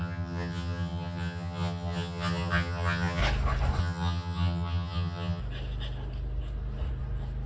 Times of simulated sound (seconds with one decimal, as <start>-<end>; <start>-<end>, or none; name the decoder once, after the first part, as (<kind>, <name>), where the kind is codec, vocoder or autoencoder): 0.0-3.2 (vocoder, HiFi-GAN); 3.8-5.4